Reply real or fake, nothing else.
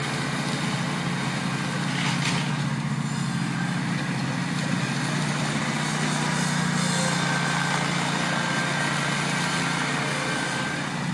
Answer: real